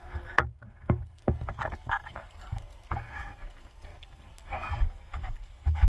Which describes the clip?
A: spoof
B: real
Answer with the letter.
A